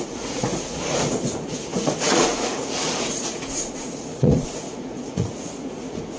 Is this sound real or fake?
fake